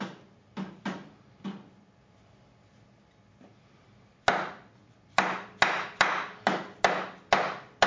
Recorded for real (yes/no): yes